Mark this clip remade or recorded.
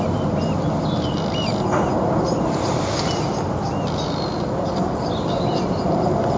recorded